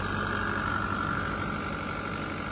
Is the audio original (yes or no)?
yes